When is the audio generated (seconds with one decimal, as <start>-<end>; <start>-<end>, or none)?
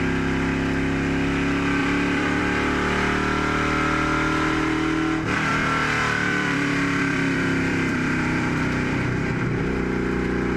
1.8-2.4; 5.5-9.2